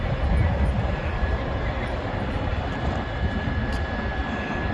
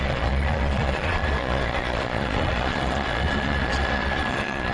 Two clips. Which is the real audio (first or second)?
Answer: first